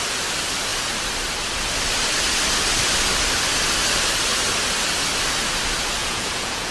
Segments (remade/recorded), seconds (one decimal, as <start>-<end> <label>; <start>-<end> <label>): 0.0-6.0 recorded; 6.0-6.7 remade